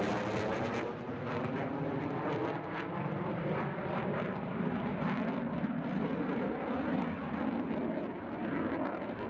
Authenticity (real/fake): real